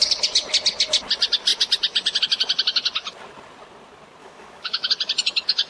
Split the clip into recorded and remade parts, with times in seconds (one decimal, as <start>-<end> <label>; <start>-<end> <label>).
0.0-4.2 recorded; 4.2-4.9 remade; 4.9-5.7 recorded